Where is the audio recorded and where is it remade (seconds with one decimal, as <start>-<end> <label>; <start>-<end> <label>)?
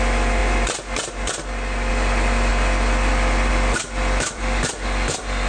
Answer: 0.0-0.4 remade; 0.4-1.9 recorded; 1.9-2.5 remade; 2.5-3.5 recorded; 3.5-5.5 remade